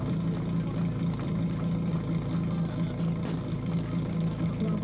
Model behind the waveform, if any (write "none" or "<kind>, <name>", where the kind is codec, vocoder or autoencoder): none